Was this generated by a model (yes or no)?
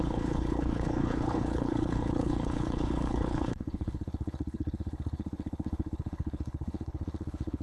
yes